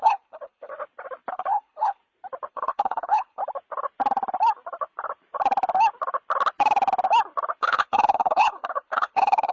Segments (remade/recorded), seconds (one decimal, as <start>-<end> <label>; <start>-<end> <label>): 0.0-0.7 remade; 0.7-1.3 recorded; 1.3-2.0 remade; 2.0-2.5 recorded; 2.5-3.4 remade; 3.4-7.6 recorded; 7.6-9.5 remade